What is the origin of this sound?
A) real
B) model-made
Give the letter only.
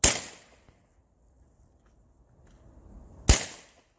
A